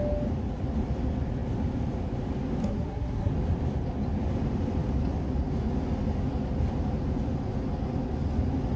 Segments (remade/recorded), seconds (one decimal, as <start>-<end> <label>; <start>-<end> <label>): 0.0-2.6 recorded; 2.6-3.3 remade; 3.3-8.8 recorded